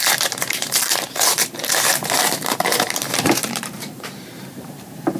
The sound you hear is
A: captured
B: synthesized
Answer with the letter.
B